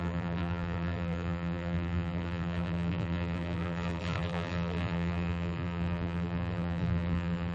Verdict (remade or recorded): remade